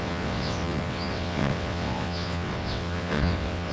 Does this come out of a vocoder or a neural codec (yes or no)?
yes